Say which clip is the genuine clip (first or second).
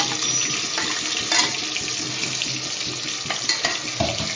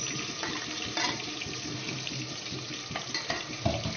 first